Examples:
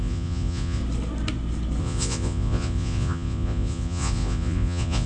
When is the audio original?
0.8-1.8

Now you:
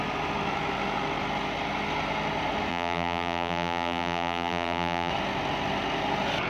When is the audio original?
0.0-2.7; 5.1-6.5